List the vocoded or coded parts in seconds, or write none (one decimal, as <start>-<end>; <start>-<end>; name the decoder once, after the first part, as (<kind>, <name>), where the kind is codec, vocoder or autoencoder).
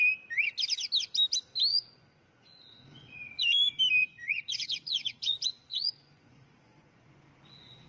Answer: 1.7-3.6 (vocoder, Vocos); 4.0-7.9